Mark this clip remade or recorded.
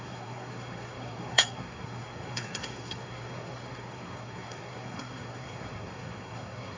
remade